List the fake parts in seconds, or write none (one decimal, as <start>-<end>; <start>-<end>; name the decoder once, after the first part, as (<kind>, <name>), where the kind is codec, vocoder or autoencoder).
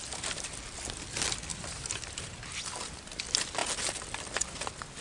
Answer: 1.5-2.3 (vocoder, BigVGAN v2)